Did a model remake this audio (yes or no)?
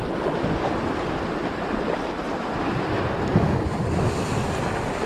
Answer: no